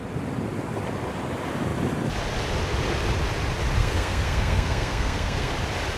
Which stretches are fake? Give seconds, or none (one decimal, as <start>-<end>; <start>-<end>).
3.8-5.5